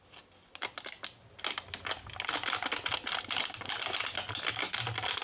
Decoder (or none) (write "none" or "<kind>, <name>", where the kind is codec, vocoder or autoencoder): none